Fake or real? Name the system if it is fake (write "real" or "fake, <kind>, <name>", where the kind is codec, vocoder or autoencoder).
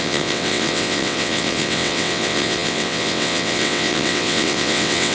fake, vocoder, WaveNeXt